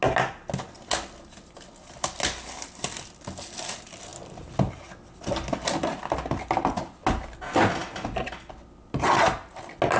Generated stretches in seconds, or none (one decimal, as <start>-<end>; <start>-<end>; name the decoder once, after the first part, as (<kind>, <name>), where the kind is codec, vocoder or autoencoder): none